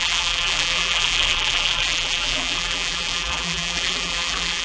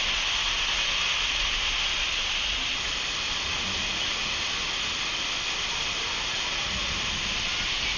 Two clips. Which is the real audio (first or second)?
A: second